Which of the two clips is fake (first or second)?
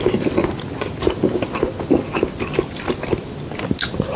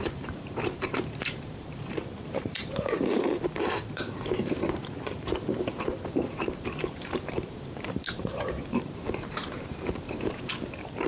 second